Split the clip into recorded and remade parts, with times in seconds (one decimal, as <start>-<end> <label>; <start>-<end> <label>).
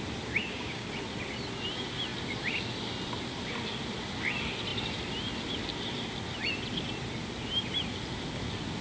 0.0-0.4 recorded; 0.4-0.9 remade; 0.9-8.8 recorded